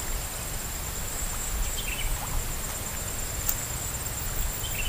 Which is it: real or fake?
real